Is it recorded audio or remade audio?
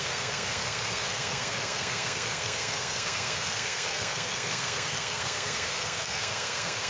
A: remade